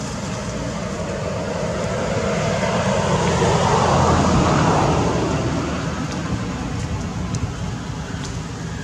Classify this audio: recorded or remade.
recorded